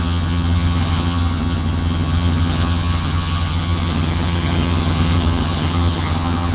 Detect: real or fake fake